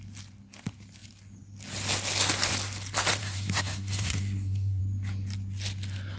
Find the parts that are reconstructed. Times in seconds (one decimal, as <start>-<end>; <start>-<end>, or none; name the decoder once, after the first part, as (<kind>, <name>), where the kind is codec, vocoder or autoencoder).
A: 3.2-4.8 (codec, SNAC)